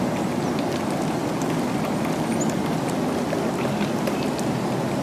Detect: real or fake real